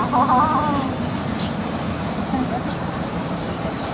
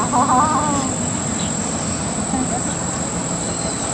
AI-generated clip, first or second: first